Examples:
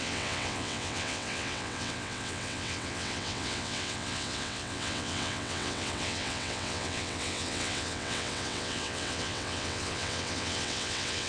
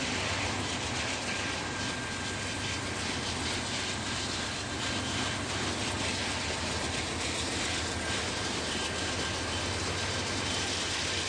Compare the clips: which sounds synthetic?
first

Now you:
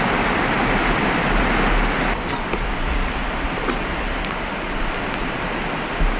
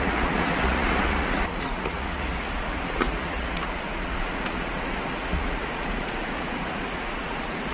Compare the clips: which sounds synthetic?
second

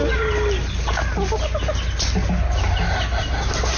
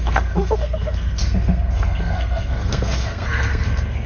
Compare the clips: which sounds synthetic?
second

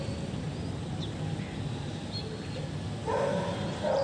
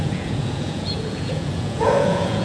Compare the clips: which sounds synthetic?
second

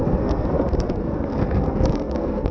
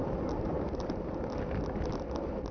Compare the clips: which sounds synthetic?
first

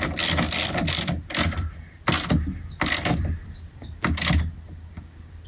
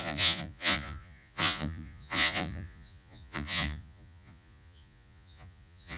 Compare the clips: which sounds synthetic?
second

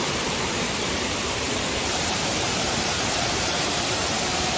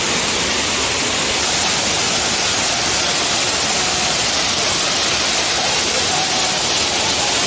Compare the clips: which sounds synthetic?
first